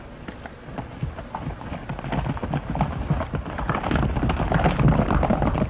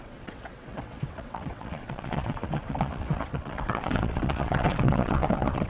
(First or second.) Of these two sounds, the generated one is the second